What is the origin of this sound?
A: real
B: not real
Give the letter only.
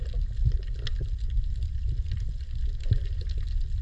A